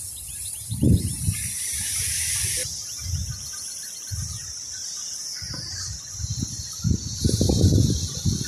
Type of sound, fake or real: real